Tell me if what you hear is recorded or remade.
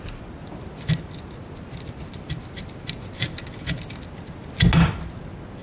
recorded